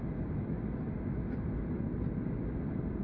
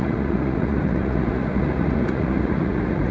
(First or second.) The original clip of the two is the first